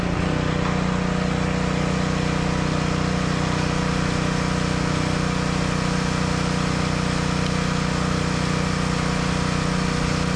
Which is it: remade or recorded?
recorded